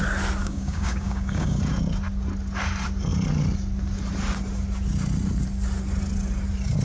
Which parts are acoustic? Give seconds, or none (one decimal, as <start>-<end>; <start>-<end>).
0.0-0.4; 1.6-6.8